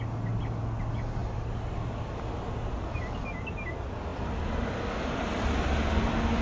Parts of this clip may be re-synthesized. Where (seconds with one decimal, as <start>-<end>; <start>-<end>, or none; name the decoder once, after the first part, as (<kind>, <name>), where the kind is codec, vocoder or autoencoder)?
none